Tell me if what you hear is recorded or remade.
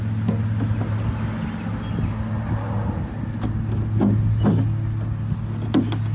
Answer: recorded